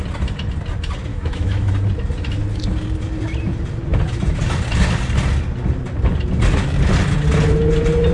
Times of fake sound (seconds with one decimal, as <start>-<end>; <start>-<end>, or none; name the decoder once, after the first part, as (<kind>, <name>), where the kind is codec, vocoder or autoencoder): 1.1-1.7 (autoencoder, DAC-VAE)